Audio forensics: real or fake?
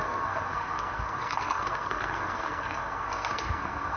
fake